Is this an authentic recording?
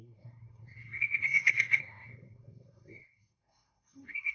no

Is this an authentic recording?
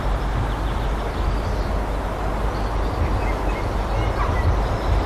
yes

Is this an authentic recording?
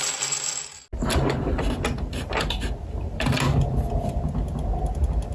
yes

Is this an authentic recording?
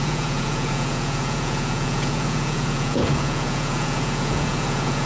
no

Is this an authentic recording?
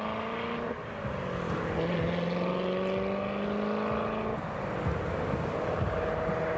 yes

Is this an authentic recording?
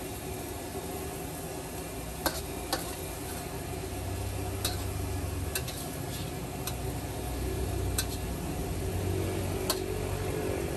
yes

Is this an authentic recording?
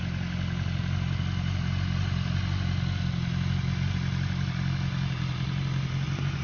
yes